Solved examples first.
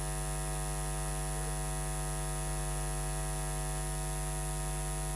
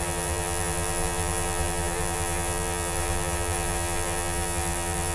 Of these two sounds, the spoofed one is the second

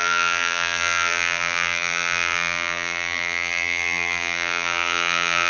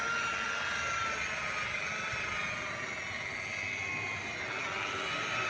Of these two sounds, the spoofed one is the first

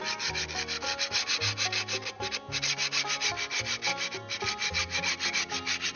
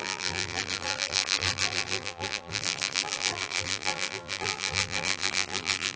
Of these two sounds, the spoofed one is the second